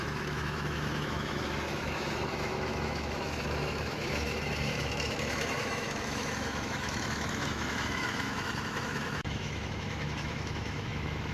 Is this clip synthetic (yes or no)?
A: yes